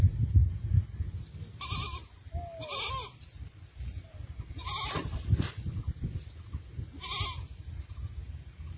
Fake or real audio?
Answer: real